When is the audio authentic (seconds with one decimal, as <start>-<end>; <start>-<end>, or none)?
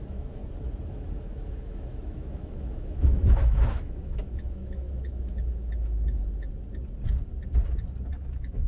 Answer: 0.4-0.9; 6.2-8.2